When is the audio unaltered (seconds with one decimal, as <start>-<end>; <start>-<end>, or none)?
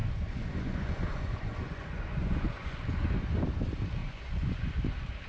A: 3.1-4.0; 4.8-5.3